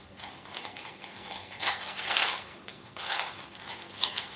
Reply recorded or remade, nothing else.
remade